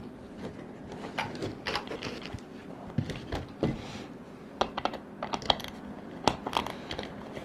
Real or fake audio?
real